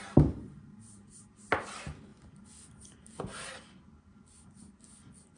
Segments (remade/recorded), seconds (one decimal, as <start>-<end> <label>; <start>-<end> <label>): 0.0-5.4 recorded